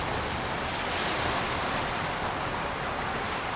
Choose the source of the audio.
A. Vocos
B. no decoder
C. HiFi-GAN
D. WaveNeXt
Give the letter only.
B